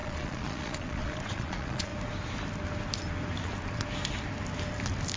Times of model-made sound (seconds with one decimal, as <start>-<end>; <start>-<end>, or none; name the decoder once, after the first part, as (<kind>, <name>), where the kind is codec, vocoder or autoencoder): 0.0-1.9 (vocoder, Vocos)